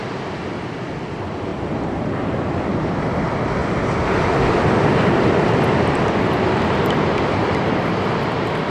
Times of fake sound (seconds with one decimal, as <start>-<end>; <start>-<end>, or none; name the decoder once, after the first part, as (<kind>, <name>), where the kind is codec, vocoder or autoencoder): 1.5-2.8 (vocoder, BigVGAN v2); 3.6-7.8